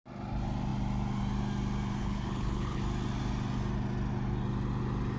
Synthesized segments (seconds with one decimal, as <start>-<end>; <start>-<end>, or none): 2.0-2.8